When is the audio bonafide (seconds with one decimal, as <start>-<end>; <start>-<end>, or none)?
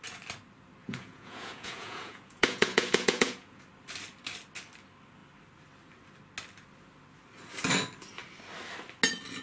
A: 0.0-0.8; 3.6-9.4